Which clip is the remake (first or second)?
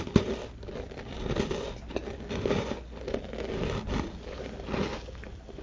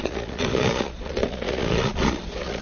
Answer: second